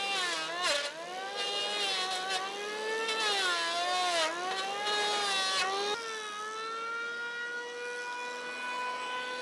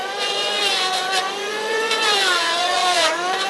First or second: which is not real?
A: second